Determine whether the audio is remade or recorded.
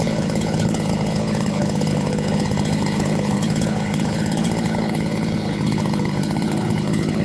remade